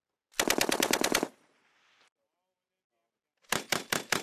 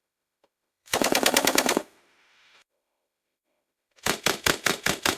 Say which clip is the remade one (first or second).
second